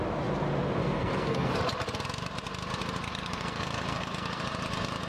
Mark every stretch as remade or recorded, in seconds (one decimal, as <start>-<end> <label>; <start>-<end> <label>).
0.0-0.8 recorded; 0.8-1.5 remade; 1.5-3.0 recorded; 3.0-4.4 remade; 4.4-5.1 recorded